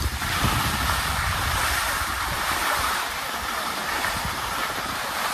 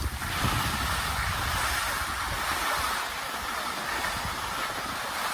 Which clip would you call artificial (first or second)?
first